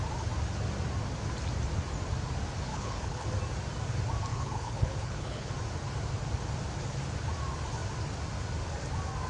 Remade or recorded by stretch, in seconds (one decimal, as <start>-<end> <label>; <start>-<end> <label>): 0.0-2.7 recorded; 2.7-3.3 remade; 3.3-4.3 recorded; 4.3-5.5 remade; 5.5-9.3 recorded